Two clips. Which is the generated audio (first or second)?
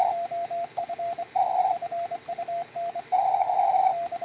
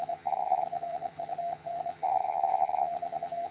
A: second